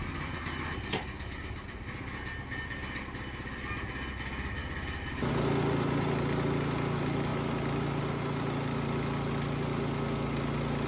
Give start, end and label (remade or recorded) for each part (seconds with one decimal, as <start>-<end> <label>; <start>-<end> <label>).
0.0-10.9 recorded